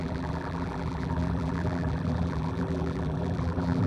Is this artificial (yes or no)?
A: yes